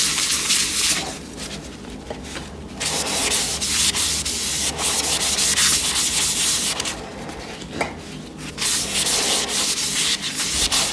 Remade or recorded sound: recorded